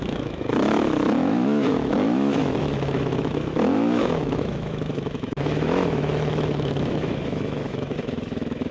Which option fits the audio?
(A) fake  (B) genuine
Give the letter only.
A